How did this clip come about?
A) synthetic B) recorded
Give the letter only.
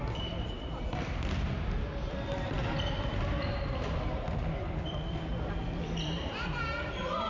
B